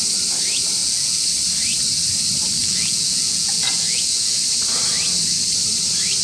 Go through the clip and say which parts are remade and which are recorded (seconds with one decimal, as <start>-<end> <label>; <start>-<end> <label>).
0.0-0.8 recorded; 0.8-1.3 remade; 1.3-2.6 recorded; 2.6-4.4 remade; 4.4-6.2 recorded